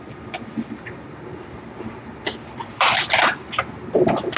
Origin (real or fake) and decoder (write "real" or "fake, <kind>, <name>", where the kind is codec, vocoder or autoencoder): real